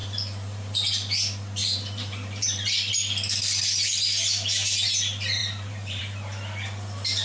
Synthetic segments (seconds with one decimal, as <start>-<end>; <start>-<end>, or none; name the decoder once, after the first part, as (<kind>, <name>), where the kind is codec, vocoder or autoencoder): 0.0-0.9 (vocoder, BigVGAN v2); 1.6-2.9; 5.4-6.0